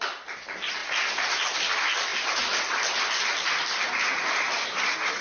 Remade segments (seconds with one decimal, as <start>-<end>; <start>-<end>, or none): none